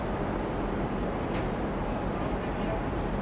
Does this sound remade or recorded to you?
recorded